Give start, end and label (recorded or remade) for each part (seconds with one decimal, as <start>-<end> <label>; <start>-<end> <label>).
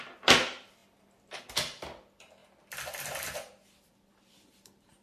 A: 0.0-5.0 recorded